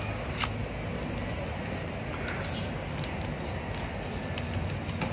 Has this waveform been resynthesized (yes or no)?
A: no